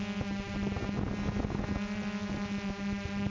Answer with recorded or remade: recorded